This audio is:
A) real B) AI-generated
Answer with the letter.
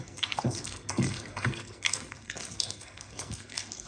B